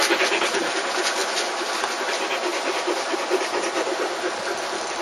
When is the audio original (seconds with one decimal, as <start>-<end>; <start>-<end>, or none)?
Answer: 0.0-5.0